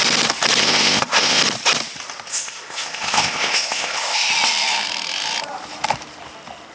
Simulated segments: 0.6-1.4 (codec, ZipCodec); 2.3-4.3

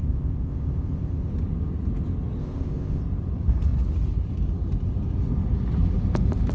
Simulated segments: 0.0-1.3 (codec, ZipCodec); 2.4-3.0

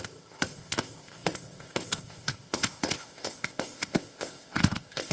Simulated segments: 0.0-5.1 (codec, ZipCodec)